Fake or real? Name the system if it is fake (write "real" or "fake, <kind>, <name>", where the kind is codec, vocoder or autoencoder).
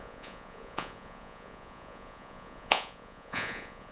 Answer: fake, vocoder, Vocos